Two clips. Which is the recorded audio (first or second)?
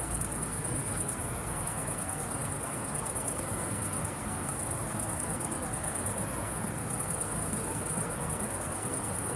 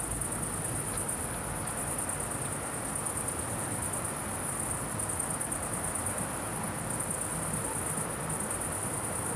second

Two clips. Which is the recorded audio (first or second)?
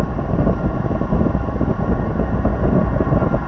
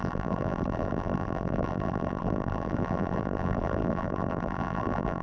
first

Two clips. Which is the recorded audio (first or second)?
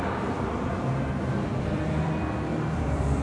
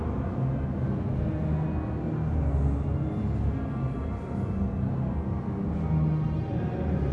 second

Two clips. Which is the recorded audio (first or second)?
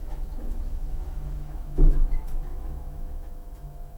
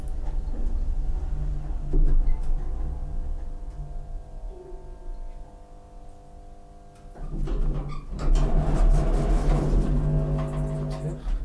second